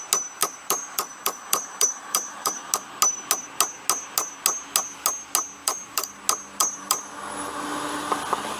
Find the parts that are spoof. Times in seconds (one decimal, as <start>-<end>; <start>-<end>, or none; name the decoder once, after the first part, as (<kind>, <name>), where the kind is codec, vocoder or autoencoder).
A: 0.4-2.6 (vocoder, BigVGAN v2); 5.6-6.1; 6.6-7.1